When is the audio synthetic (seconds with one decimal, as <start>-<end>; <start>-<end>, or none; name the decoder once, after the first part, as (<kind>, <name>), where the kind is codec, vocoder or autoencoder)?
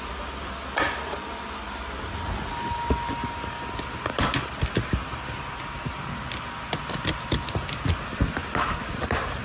8.4-9.4 (vocoder, BigVGAN v2)